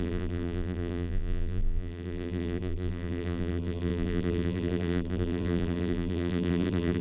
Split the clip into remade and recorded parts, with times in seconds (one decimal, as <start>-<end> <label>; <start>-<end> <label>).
0.0-7.0 remade